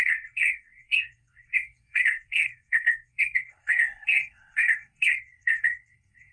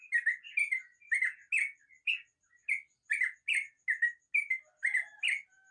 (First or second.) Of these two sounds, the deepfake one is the first